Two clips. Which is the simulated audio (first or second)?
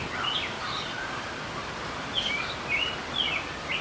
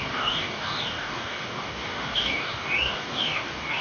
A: second